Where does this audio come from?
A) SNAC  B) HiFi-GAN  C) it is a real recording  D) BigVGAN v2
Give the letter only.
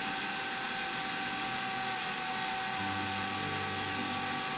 C